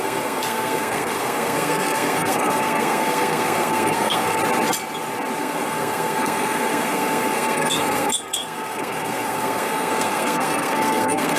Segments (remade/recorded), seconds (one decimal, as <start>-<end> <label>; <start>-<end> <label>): 0.0-4.4 remade; 4.4-5.4 recorded; 5.4-11.4 remade